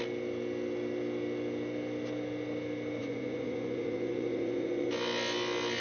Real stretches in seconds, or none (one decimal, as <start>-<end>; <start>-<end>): 0.0-3.0; 4.9-5.8